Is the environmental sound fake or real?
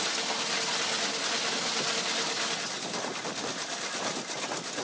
real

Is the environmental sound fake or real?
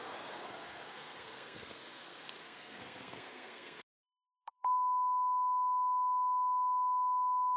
fake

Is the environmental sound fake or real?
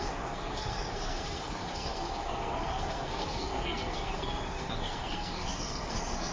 fake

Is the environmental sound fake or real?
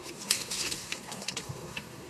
fake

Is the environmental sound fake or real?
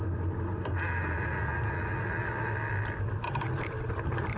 real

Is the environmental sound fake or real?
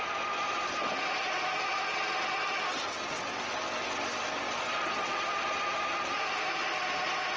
real